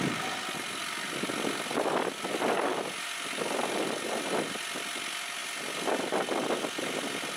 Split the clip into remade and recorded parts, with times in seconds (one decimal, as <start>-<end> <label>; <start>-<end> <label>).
0.0-7.4 recorded